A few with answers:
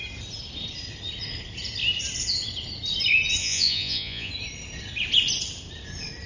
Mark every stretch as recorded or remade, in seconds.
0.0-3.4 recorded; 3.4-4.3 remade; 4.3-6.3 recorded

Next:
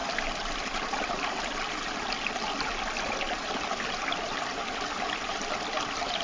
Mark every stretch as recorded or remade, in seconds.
0.0-6.2 recorded